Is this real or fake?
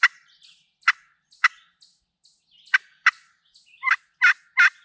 real